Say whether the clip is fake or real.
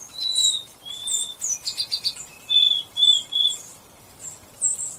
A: real